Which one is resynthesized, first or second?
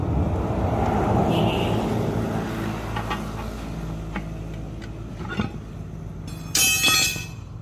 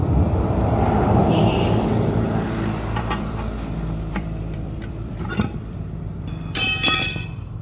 second